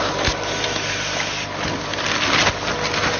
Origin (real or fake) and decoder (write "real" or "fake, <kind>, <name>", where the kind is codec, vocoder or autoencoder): real